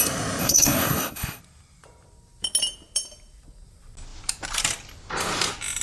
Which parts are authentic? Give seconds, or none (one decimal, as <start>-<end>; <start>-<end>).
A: 0.0-0.4; 1.4-5.8